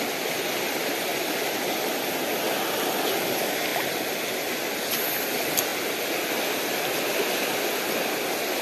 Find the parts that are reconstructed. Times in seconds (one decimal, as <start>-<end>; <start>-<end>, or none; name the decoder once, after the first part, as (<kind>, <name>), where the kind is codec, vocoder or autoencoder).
none